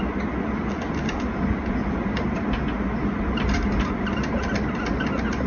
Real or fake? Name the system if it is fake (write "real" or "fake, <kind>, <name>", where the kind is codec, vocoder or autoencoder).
real